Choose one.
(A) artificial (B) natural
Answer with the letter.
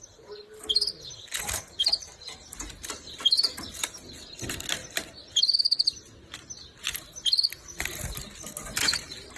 B